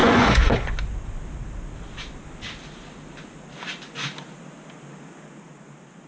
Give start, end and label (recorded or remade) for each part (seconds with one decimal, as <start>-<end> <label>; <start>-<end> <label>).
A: 0.0-0.7 remade; 0.7-6.1 recorded